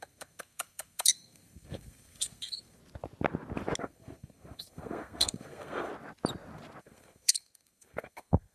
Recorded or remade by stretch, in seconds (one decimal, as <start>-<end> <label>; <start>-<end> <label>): 0.0-2.8 remade; 2.8-3.8 recorded; 3.8-5.9 remade; 5.9-6.8 recorded; 6.8-8.5 remade